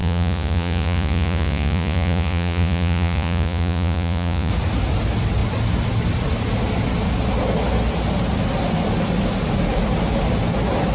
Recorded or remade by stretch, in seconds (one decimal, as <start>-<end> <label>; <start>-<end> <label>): 0.0-4.5 remade; 4.5-10.9 recorded